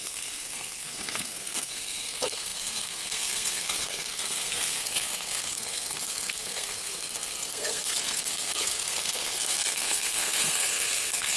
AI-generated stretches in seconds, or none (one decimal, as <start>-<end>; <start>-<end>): 0.0-11.4